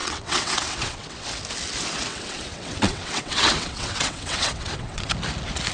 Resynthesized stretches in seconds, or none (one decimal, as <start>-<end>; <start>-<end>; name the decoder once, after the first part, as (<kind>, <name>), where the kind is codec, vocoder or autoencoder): 0.0-1.3 (vocoder, WaveNeXt); 2.1-5.1